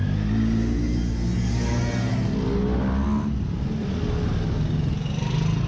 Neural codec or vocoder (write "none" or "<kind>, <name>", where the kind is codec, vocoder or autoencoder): none